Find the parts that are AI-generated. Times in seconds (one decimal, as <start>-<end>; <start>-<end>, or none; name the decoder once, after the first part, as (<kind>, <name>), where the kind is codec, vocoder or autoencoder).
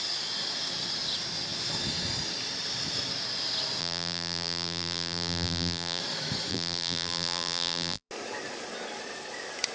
3.8-6.0 (vocoder, BigVGAN v2); 6.5-8.1